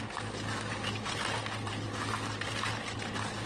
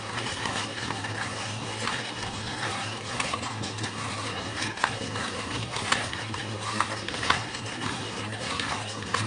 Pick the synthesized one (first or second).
second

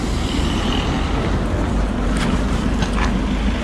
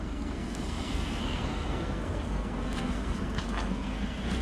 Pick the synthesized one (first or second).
second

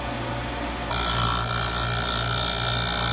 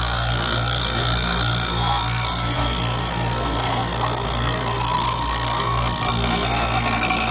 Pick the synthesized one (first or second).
second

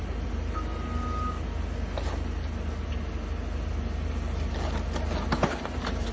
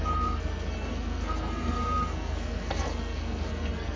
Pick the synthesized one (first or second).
second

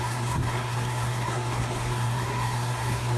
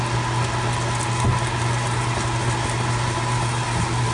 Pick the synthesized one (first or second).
first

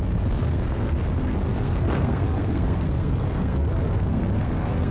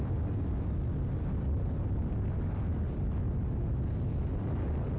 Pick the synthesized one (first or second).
first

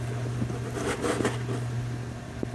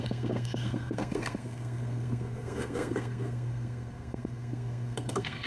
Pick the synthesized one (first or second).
second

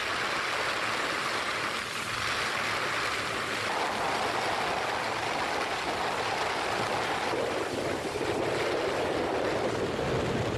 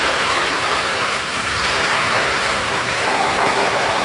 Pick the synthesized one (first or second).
second